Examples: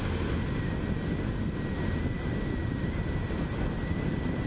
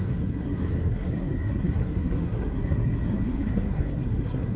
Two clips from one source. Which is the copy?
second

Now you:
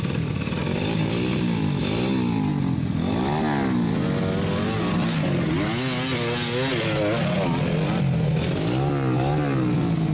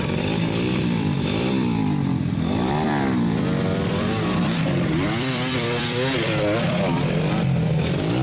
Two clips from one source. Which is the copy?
second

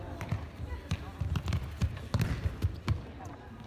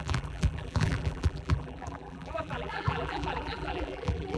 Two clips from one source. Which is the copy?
second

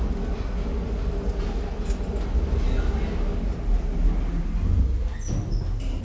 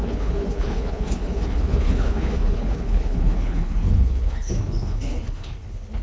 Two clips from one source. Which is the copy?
second